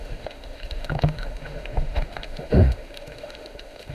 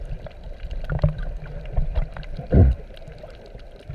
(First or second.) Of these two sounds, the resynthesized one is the first